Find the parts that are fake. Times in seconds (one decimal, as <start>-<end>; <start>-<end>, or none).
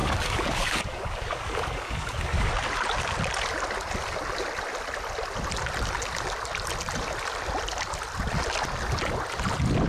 0.0-2.5